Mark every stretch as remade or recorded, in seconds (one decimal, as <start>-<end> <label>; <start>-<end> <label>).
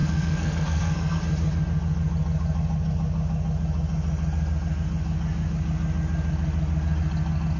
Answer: 0.0-1.2 remade; 1.2-7.6 recorded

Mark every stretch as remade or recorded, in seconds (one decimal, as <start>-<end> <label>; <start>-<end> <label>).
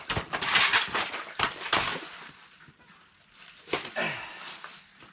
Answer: 0.0-5.1 recorded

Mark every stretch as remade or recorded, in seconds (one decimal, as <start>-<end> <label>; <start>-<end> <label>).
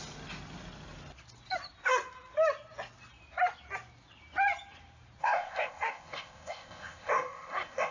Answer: 0.0-5.2 recorded; 5.2-7.9 remade